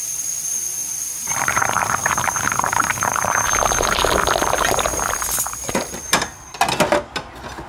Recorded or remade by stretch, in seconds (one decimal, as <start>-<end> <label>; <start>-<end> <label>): 0.0-0.8 recorded; 0.8-4.1 remade; 4.1-7.7 recorded